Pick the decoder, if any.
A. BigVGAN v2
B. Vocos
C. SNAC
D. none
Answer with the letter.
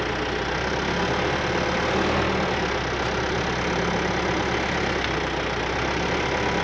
D